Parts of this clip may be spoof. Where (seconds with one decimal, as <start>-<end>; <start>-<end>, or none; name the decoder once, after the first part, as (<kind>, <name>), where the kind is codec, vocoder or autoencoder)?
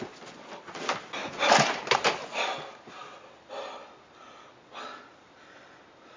none